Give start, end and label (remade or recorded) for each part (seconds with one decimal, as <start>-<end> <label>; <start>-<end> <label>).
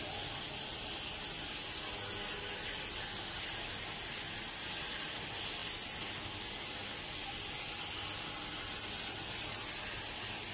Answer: 0.0-10.5 recorded